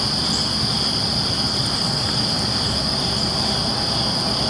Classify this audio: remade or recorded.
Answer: recorded